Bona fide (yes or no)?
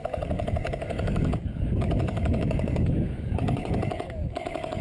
no